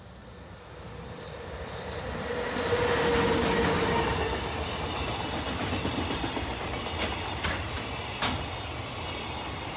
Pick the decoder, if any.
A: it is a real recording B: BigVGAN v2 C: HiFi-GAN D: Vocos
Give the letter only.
A